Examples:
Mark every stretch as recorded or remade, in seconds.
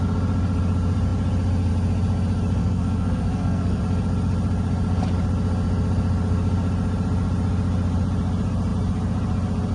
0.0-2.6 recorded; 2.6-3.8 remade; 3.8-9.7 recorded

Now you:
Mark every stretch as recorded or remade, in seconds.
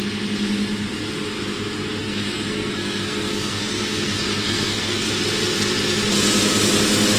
0.0-2.0 recorded; 2.0-5.1 remade; 5.1-7.2 recorded